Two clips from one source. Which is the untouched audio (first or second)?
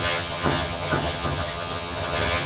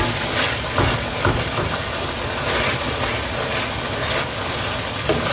second